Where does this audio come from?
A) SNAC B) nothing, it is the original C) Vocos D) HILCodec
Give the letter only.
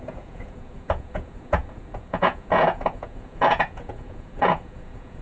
C